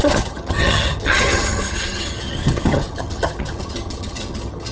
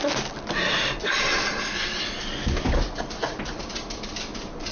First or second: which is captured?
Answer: second